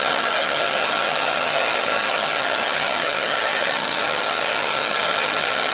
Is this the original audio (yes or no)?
no